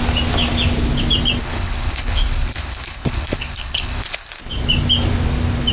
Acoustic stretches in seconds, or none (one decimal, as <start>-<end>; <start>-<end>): 0.0-1.4; 4.4-5.7

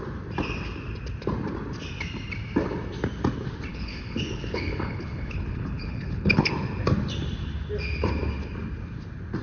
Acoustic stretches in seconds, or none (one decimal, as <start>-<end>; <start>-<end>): 0.0-3.7; 6.5-9.4

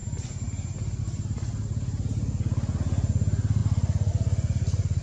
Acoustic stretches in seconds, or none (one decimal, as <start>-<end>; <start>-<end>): 0.0-5.0

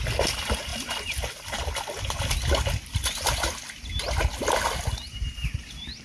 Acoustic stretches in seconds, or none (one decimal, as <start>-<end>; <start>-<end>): 0.0-6.0

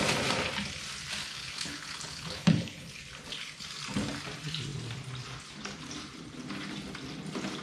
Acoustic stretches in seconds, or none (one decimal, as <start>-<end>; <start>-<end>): 0.0-1.2; 3.0-7.6